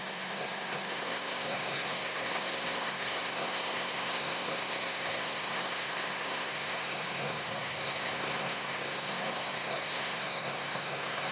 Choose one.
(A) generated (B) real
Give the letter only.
A